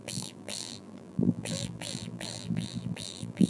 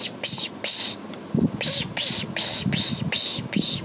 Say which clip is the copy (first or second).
first